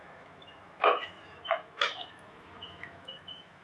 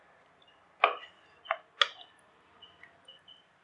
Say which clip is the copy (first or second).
first